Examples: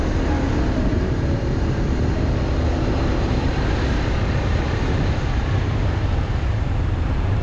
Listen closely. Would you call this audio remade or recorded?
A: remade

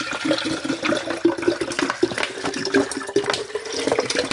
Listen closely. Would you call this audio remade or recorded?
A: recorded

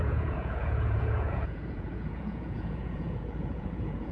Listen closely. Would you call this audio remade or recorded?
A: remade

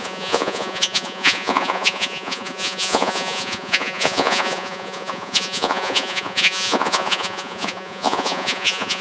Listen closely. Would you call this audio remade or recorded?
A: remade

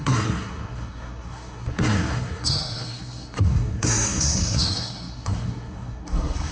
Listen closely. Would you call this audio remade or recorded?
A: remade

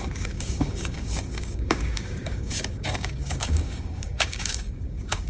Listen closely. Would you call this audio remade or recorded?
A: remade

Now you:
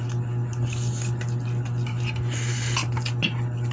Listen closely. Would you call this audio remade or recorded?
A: recorded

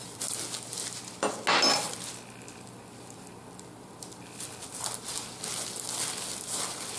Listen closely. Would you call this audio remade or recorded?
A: recorded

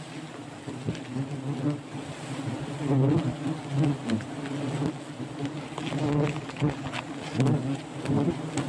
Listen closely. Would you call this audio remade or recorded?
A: recorded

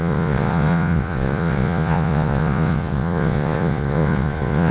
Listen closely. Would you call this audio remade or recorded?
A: remade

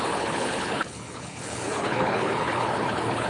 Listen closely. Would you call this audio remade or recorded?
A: remade